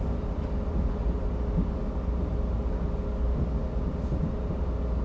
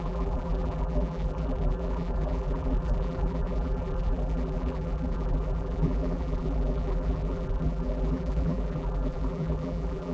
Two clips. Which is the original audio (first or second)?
first